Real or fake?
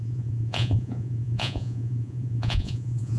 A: fake